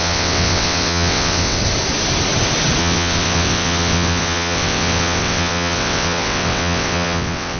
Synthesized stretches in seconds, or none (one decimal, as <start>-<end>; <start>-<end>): 0.0-1.6; 2.8-7.6